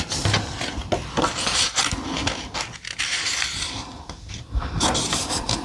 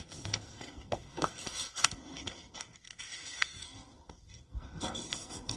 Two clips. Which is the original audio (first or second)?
first